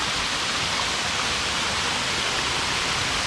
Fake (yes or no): no